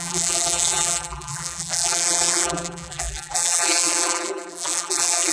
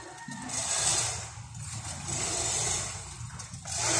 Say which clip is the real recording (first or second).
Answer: second